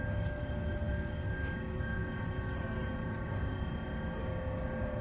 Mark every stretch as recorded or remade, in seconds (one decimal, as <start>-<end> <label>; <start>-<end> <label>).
0.0-5.0 recorded